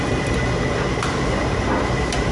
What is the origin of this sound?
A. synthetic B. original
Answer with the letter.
B